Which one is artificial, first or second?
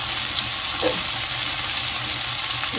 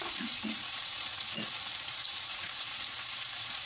second